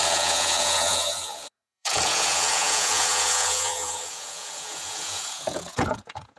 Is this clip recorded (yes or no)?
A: no